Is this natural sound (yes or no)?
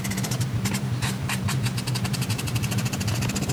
no